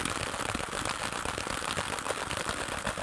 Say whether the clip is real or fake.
real